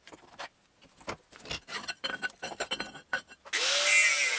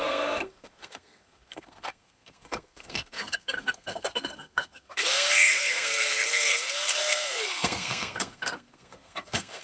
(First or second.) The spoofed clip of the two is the second